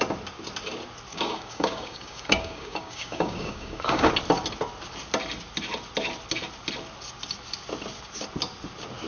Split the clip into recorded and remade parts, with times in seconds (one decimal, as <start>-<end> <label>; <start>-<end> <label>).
0.0-1.1 recorded; 1.1-4.1 remade; 4.1-9.1 recorded